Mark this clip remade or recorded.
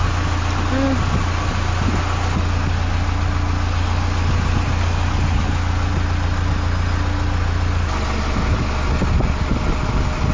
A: recorded